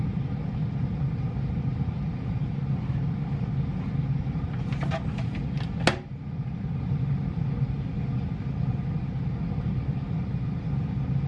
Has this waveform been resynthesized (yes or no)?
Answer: no